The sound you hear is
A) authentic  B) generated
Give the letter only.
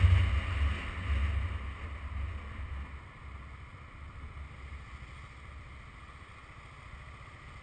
A